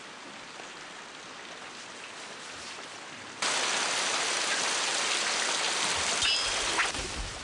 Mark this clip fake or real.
real